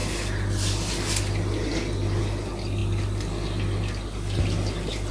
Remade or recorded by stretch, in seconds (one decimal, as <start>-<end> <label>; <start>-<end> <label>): 0.0-5.1 recorded